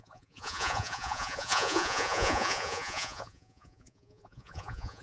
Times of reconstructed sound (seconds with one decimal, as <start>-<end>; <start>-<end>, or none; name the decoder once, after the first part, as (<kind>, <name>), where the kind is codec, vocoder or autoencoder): 0.0-5.0 (vocoder, Vocos)